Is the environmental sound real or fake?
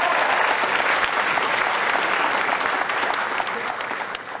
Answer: real